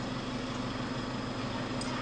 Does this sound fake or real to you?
real